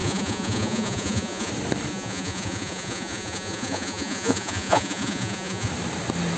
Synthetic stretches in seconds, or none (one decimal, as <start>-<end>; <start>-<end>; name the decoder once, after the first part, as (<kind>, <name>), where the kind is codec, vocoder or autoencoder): 0.0-1.5 (vocoder, Vocos); 1.9-5.7

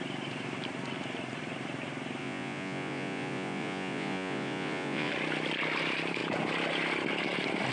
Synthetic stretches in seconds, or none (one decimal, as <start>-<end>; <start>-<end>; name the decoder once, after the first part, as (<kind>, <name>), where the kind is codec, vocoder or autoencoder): 2.2-5.1 (vocoder, Vocos)

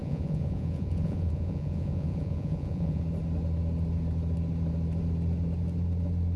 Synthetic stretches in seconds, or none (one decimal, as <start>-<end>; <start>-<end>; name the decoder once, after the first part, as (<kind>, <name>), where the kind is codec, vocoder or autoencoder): 0.0-3.0 (vocoder, Vocos)

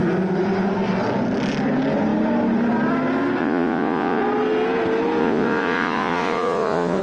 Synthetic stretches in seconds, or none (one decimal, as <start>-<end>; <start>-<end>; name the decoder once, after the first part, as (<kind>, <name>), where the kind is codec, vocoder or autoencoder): 3.4-4.2 (vocoder, Vocos); 5.2-7.0

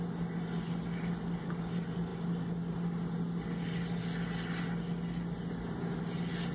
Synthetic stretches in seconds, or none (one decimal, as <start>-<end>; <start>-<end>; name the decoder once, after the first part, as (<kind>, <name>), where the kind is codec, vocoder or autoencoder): none

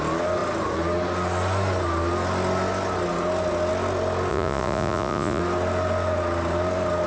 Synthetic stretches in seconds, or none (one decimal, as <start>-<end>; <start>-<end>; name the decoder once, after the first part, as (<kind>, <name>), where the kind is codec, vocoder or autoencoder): 4.3-5.4 (vocoder, Vocos)